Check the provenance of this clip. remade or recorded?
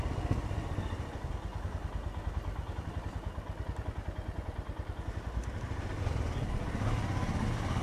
recorded